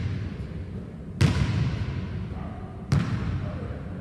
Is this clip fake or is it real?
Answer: real